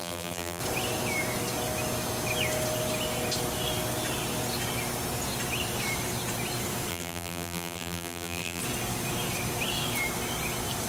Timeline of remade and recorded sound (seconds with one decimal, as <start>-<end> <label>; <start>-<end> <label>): 0.0-0.6 remade; 0.6-6.9 recorded; 6.9-8.6 remade; 8.6-10.9 recorded